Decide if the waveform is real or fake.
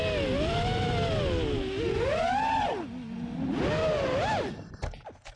real